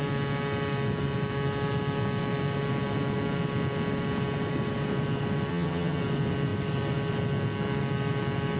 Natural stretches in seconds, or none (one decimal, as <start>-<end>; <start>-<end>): 0.0-5.5; 6.0-8.6